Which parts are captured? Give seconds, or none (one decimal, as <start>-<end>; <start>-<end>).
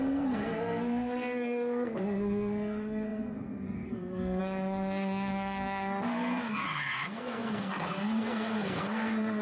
none